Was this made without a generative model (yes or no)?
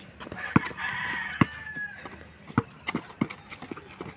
yes